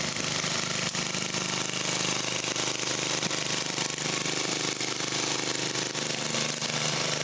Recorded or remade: recorded